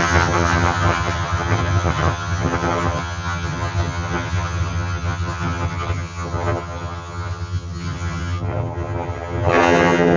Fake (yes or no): yes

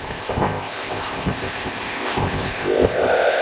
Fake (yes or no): yes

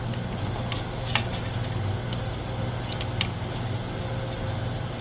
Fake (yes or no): no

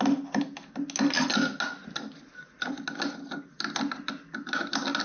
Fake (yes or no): no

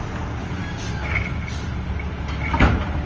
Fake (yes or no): no